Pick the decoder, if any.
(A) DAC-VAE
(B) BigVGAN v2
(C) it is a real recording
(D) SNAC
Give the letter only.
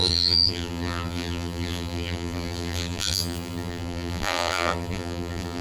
B